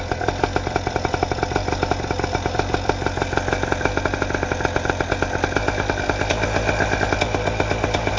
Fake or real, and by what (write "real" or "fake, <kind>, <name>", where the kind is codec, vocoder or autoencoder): real